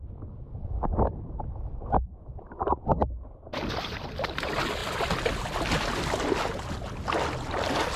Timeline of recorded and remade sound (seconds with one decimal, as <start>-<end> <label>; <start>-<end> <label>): 0.0-8.0 recorded